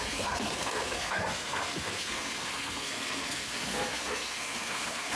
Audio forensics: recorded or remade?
remade